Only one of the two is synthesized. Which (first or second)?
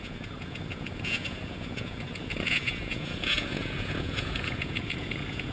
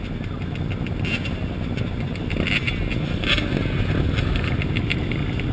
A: first